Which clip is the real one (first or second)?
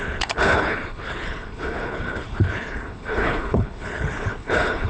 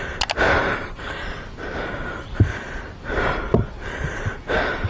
second